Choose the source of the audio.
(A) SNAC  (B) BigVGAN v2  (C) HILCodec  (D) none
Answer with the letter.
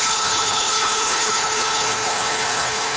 C